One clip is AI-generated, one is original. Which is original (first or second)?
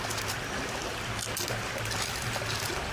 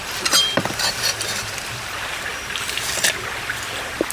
first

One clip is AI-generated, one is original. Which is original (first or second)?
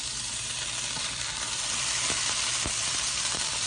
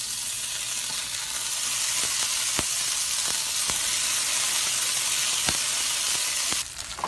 second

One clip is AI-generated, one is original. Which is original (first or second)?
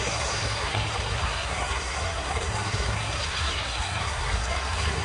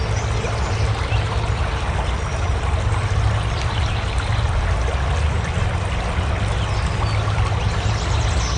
second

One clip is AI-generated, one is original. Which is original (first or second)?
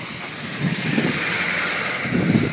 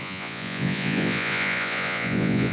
first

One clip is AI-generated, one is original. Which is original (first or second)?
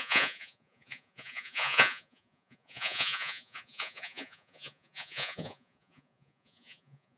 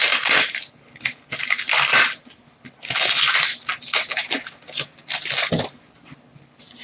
second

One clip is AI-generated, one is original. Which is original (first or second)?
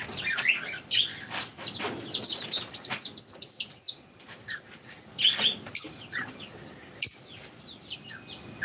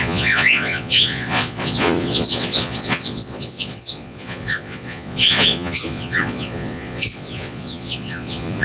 first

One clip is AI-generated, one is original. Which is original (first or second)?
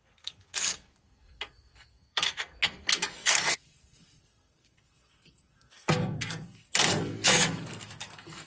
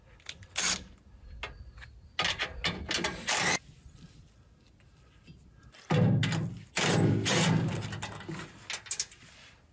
second